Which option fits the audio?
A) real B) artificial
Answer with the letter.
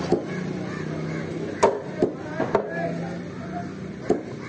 A